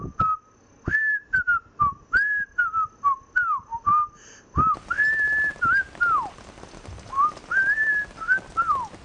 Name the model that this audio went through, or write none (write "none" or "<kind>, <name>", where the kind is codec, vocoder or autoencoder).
none